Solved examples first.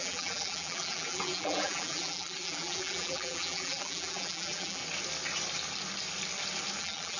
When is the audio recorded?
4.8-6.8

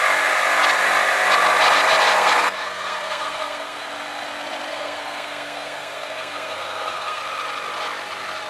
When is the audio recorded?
0.0-2.1; 3.9-4.7; 7.2-8.5

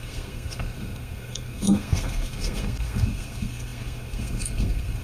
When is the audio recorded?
none

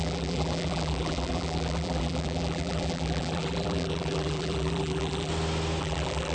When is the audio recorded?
5.3-5.8

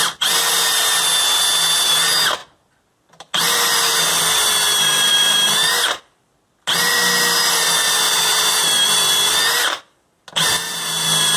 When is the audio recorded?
0.0-11.4